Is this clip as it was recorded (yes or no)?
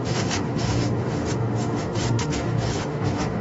no